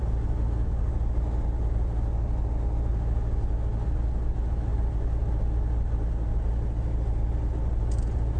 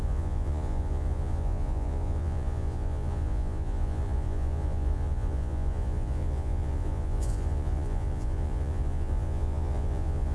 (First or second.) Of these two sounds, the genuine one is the first